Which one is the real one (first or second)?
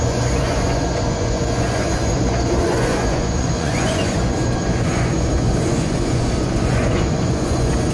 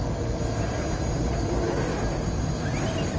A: second